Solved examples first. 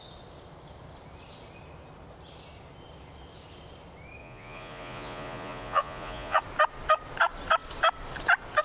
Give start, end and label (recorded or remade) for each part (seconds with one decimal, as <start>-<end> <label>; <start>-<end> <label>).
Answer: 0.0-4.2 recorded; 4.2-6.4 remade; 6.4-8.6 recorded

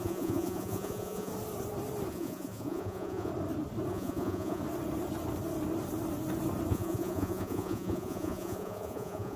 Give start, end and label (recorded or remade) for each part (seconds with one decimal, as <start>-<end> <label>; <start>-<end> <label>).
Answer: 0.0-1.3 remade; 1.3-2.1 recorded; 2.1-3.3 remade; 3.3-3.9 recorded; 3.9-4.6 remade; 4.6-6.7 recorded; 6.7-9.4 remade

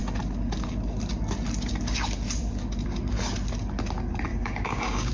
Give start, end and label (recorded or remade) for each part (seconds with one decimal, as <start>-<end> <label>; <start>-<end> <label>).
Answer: 0.0-4.3 recorded; 4.3-5.1 remade